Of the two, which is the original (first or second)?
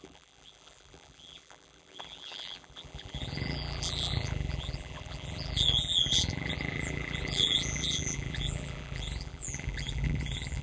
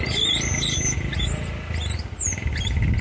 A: second